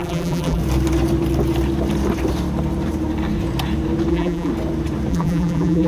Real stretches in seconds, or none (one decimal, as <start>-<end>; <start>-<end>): 0.6-4.1; 4.5-5.1